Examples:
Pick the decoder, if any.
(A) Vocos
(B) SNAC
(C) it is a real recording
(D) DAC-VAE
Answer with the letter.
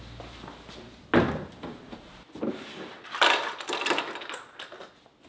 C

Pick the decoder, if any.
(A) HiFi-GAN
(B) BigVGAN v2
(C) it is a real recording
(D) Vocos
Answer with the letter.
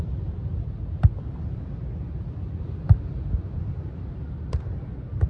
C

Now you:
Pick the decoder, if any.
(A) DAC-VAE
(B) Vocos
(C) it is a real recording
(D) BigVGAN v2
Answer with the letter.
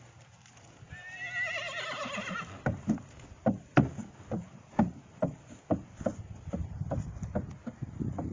C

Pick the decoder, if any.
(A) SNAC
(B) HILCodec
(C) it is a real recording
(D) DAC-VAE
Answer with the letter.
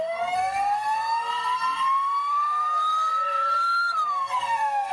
A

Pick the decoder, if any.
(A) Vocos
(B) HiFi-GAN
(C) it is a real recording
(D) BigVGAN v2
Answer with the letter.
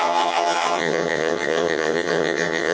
B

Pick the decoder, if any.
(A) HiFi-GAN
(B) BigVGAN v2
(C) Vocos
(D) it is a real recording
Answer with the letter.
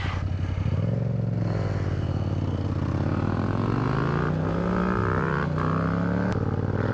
D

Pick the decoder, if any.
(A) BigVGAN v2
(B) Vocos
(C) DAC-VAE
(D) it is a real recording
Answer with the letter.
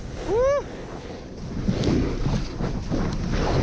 D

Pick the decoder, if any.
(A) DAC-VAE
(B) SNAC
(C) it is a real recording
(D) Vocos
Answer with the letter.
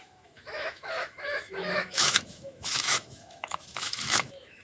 A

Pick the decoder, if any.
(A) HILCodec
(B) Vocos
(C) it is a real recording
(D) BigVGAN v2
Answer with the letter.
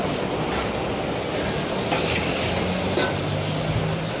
C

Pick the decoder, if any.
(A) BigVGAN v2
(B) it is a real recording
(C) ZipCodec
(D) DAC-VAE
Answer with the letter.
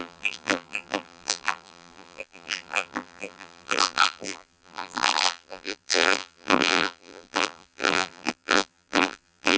A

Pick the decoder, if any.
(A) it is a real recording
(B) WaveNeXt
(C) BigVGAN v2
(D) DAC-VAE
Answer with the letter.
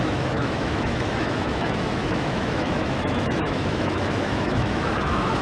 D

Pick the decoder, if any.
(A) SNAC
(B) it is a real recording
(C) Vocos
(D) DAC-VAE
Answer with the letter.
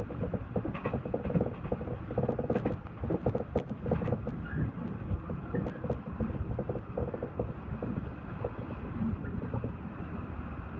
B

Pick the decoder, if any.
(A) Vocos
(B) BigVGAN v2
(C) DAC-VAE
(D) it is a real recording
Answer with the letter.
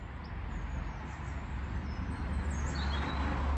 D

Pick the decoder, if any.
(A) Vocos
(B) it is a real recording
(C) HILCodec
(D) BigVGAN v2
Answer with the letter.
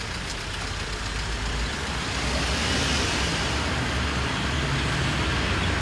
B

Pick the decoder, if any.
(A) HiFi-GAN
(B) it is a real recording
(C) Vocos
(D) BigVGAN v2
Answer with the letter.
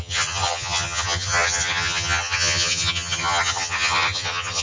A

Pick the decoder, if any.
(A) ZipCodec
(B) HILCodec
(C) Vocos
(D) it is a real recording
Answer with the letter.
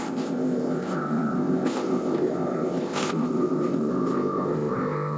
A